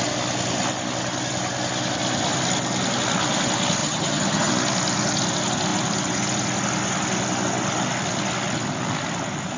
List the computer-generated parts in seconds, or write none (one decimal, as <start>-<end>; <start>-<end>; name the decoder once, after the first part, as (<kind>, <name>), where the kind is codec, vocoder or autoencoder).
3.8-4.5 (vocoder, HiFi-GAN)